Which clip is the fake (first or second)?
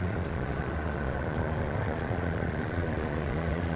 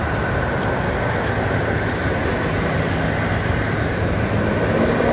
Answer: first